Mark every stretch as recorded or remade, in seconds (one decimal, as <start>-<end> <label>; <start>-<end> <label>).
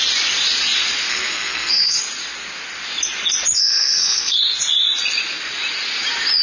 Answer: 0.0-1.1 recorded; 1.1-2.0 remade; 2.0-3.6 recorded; 3.6-4.4 remade; 4.4-6.4 recorded